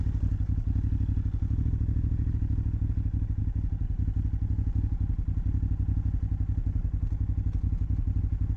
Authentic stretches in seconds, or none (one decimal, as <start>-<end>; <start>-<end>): 0.0-8.6